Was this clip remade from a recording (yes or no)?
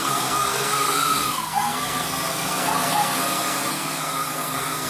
yes